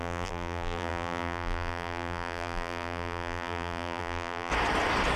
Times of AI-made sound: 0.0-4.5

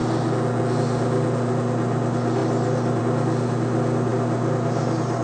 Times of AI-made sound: 2.4-3.0; 4.1-5.2

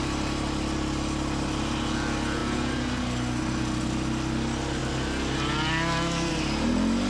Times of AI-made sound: none

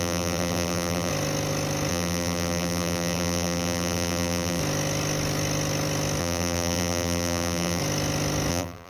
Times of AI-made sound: 0.0-1.1; 1.9-4.6; 6.2-7.8; 8.5-8.9

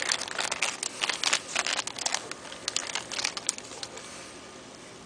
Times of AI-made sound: 2.8-4.0